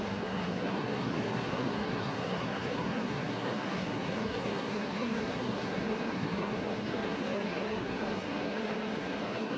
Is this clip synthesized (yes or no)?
yes